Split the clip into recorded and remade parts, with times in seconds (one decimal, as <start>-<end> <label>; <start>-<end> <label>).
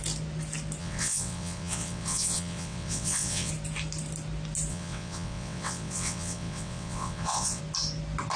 0.0-0.8 recorded; 0.8-3.5 remade; 3.5-4.7 recorded; 4.7-7.6 remade; 7.6-8.4 recorded